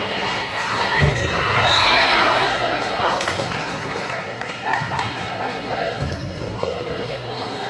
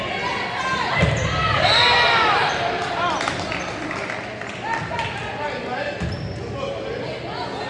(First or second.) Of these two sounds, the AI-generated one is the first